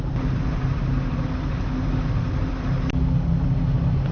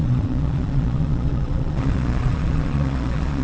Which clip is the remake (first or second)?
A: second